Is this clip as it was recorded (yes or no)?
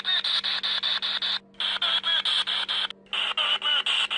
yes